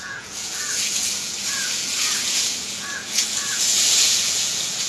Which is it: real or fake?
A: fake